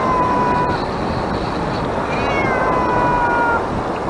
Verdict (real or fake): real